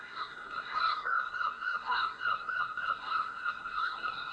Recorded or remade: remade